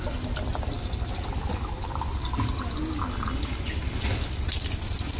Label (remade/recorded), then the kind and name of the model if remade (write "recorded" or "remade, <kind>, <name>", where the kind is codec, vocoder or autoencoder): recorded